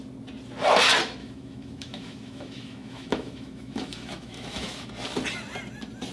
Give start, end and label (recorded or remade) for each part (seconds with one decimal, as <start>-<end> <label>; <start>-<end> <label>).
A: 0.0-1.2 recorded; 1.2-4.9 remade; 4.9-6.1 recorded